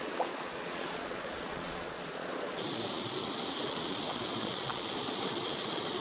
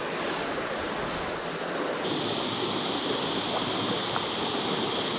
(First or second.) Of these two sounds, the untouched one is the second